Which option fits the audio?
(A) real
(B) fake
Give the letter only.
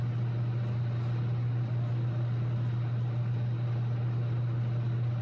A